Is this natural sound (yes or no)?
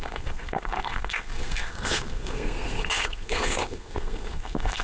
no